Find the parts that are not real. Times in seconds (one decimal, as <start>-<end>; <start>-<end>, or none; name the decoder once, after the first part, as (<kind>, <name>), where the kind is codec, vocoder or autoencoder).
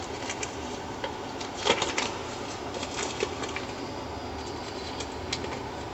0.0-2.2 (vocoder, BigVGAN v2)